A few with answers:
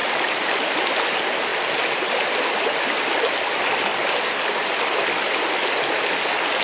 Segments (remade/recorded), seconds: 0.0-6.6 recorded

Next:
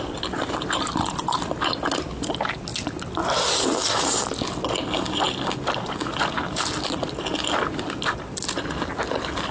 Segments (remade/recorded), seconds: 0.0-9.5 recorded

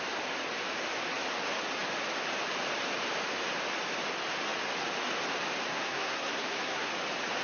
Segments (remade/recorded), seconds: 0.0-5.7 recorded; 5.7-6.9 remade; 6.9-7.4 recorded

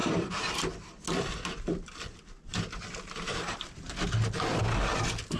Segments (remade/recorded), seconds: 0.0-0.7 remade; 0.7-2.5 recorded; 2.5-3.6 remade; 3.6-5.4 recorded